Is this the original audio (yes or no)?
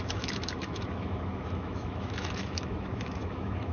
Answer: no